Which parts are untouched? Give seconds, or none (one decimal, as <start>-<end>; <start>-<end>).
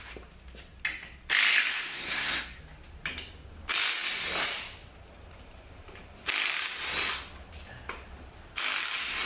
0.0-1.7; 2.6-9.3